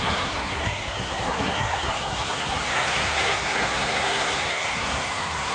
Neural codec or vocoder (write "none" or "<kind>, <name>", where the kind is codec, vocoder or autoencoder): codec, SNAC